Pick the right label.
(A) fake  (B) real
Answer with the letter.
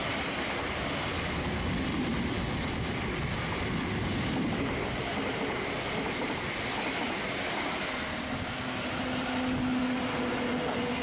B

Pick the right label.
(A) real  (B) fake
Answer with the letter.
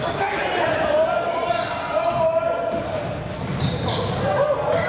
A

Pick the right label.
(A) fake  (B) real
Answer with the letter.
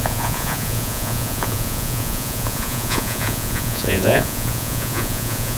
A